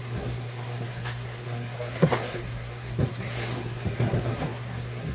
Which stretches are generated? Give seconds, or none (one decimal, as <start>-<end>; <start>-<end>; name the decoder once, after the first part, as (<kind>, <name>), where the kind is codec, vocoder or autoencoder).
0.0-5.1 (codec, SNAC)